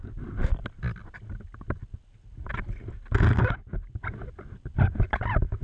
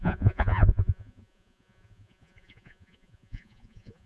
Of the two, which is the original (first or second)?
first